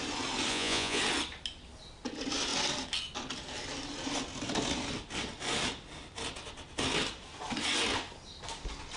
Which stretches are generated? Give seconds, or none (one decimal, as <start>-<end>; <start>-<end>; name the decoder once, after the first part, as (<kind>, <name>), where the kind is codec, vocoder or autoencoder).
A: 0.5-1.0 (vocoder, Vocos)